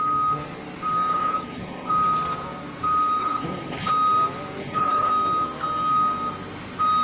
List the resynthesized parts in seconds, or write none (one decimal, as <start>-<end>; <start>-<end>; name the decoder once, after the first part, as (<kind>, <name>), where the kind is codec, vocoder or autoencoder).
1.1-1.9 (codec, HILCodec); 3.2-3.9; 4.6-5.1